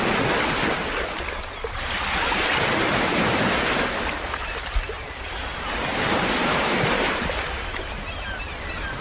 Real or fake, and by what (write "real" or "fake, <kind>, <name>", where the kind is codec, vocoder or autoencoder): real